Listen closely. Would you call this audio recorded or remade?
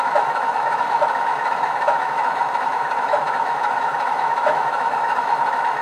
remade